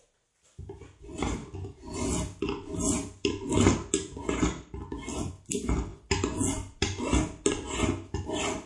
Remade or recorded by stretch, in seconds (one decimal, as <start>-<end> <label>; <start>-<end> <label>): 0.0-8.7 recorded